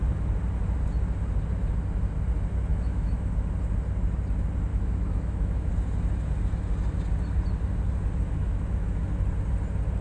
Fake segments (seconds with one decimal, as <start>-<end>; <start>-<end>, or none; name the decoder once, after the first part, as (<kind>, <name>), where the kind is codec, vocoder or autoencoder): 2.7-3.3 (autoencoder, DAC-VAE); 4.7-5.7; 8.4-9.0